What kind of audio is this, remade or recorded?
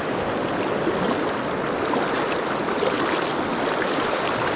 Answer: recorded